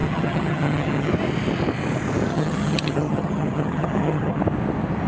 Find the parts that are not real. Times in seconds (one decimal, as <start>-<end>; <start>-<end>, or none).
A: 0.0-1.1; 2.3-4.4